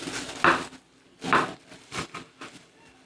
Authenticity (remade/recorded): recorded